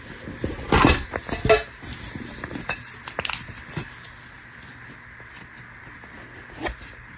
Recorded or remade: recorded